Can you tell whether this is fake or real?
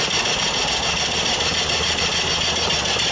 real